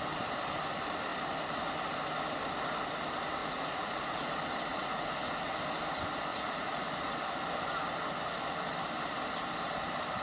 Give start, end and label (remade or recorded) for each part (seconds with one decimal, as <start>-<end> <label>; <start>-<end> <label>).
0.0-3.4 recorded; 3.4-4.2 remade; 4.2-4.7 recorded; 4.7-5.4 remade; 5.4-6.3 recorded; 6.3-7.1 remade; 7.1-10.2 recorded